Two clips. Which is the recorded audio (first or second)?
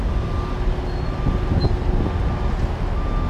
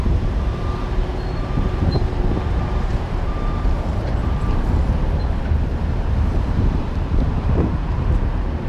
first